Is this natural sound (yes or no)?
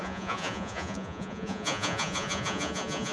no